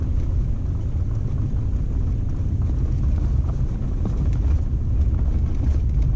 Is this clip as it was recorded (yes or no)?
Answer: yes